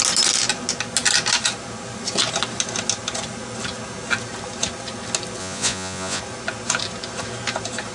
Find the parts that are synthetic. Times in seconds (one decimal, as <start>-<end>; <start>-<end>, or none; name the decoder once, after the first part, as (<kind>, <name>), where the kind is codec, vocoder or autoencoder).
5.4-6.2 (vocoder, Vocos)